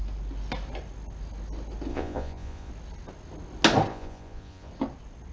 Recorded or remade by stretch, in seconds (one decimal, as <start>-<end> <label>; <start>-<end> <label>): 0.0-1.9 recorded; 1.9-2.7 remade; 2.7-3.9 recorded; 3.9-4.7 remade; 4.7-5.3 recorded